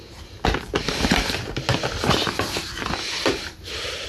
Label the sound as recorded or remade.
recorded